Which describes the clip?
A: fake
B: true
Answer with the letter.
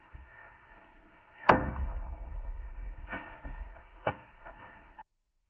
A